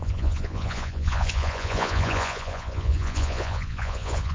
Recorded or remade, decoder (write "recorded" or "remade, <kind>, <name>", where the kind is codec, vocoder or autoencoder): remade, vocoder, Vocos